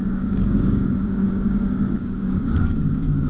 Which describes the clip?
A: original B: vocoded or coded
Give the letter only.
B